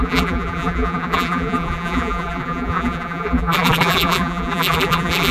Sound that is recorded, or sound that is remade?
remade